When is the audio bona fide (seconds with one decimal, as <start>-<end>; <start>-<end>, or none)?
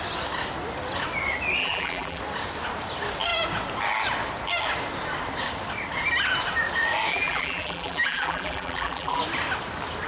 0.0-1.6; 2.2-7.1; 9.2-10.1